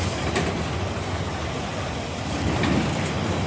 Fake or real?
real